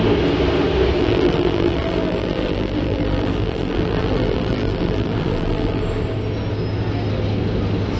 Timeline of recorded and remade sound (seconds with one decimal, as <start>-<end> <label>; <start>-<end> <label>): 0.0-1.0 recorded; 1.0-5.8 remade; 5.8-8.0 recorded